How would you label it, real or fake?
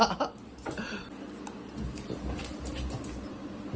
real